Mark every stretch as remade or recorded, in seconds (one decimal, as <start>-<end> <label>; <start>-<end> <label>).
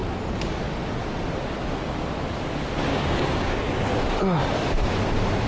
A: 0.0-2.9 recorded; 2.9-3.7 remade; 3.7-5.5 recorded